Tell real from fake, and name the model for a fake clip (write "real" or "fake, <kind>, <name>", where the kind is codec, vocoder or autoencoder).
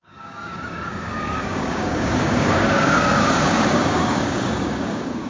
fake, codec, DAC